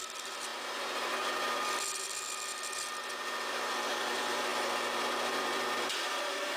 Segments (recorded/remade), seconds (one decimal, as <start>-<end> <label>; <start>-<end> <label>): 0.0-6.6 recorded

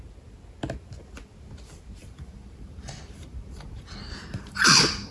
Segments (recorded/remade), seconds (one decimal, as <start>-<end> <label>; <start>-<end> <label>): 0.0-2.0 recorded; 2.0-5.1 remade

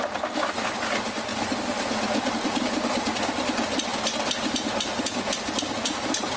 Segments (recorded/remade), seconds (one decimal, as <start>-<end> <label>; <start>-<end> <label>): 0.0-6.4 recorded

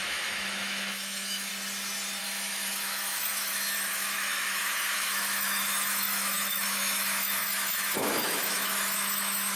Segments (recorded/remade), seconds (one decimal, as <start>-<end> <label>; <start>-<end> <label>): 0.0-1.5 remade; 1.5-2.2 recorded; 2.2-9.6 remade

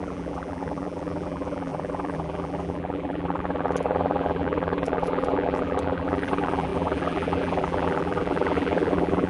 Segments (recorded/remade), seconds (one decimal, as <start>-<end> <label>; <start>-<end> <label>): 0.0-9.3 remade